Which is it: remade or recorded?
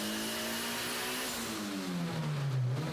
recorded